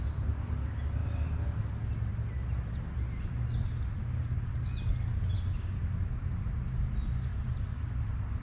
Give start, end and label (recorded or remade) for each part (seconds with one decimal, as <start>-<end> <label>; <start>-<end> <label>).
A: 0.0-8.4 recorded